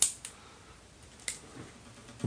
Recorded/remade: recorded